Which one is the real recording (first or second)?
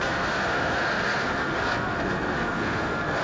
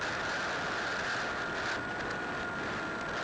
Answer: second